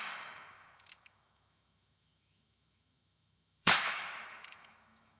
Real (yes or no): no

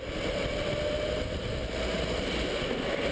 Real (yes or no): yes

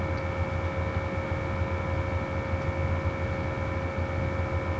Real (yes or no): yes